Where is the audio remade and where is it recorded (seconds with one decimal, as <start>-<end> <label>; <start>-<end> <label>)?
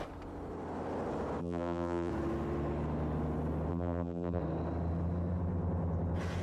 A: 0.0-1.4 recorded; 1.4-2.1 remade; 2.1-3.7 recorded; 3.7-4.4 remade; 4.4-6.4 recorded